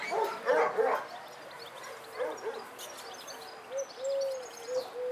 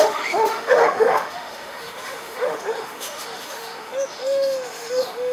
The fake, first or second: second